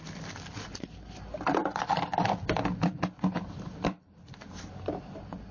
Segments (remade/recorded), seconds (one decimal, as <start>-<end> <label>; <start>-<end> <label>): 0.0-5.5 remade